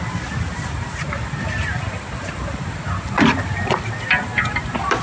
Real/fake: real